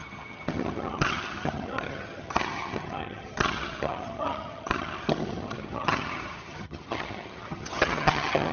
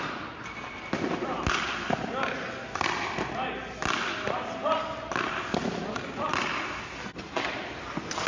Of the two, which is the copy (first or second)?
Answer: first